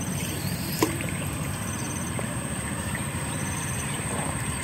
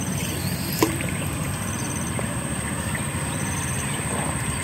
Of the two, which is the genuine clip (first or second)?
second